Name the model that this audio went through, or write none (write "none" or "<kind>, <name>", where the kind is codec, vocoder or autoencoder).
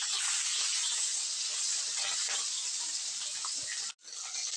none